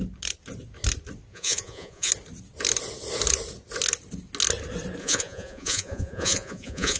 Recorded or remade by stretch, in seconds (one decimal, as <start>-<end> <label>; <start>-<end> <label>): 0.0-1.3 recorded; 1.3-2.1 remade; 2.1-5.0 recorded; 5.0-7.0 remade

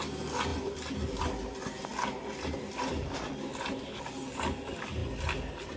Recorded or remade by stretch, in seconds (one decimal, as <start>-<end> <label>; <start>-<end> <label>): 0.0-5.8 recorded